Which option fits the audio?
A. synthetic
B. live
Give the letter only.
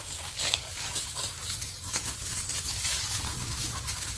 A